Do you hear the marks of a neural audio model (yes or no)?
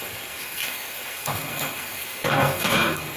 yes